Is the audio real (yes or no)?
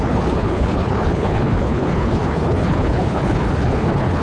no